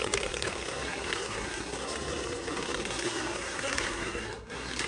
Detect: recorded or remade remade